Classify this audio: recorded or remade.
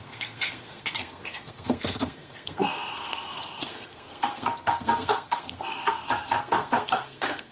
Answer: remade